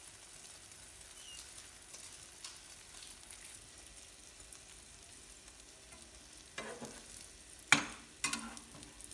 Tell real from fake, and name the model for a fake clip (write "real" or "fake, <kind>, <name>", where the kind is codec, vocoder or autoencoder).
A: real